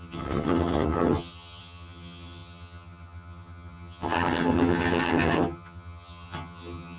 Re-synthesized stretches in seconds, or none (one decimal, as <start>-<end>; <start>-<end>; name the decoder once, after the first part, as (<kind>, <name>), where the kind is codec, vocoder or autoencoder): 0.0-7.0 (vocoder, HiFi-GAN)